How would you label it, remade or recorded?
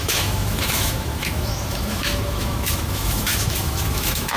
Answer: remade